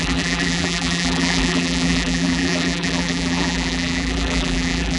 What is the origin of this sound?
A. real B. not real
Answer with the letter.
B